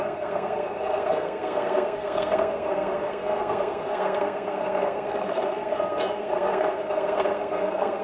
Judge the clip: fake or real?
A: fake